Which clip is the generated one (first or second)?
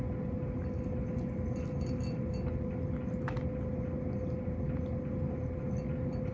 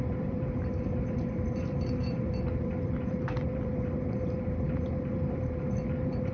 second